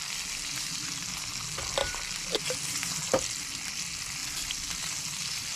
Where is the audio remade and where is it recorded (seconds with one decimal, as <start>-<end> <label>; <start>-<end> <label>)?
0.0-1.8 recorded; 1.8-2.4 remade; 2.4-5.6 recorded